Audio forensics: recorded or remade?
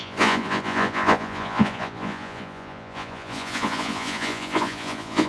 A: remade